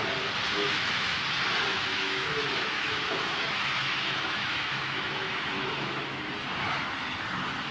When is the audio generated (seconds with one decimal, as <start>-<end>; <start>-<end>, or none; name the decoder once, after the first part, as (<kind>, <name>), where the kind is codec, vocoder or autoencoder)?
0.5-1.2 (autoencoder, DAC-VAE); 1.7-6.3